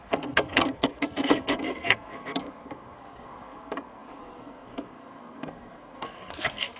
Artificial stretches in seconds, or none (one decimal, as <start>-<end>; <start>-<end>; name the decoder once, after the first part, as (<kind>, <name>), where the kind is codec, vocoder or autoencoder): 0.0-6.8 (codec, SNAC)